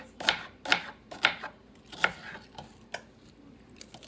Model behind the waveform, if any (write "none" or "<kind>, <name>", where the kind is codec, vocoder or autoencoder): none